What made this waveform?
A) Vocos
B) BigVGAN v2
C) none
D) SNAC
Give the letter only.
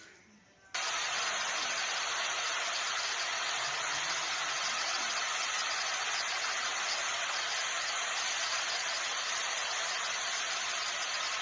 C